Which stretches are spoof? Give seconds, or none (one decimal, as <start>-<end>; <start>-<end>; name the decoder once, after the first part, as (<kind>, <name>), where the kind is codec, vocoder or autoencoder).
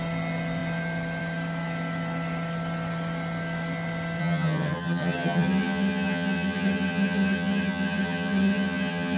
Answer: 4.2-9.2 (vocoder, HiFi-GAN)